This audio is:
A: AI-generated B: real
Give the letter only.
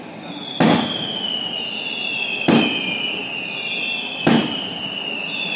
B